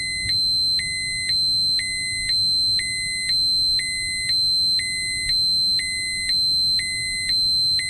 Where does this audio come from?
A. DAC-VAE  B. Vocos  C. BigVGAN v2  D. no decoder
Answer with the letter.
D